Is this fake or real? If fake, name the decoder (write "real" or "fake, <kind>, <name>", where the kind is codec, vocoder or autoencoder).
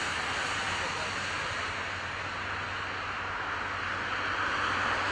real